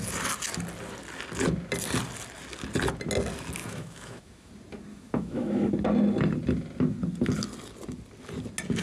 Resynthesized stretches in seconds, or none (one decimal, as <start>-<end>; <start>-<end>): 3.6-4.5; 4.9-5.7